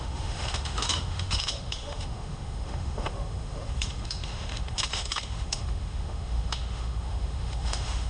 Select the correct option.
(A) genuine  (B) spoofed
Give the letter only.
B